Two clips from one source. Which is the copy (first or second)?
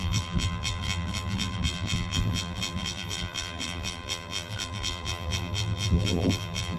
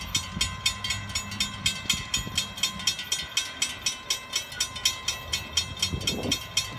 first